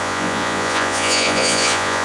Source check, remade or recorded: remade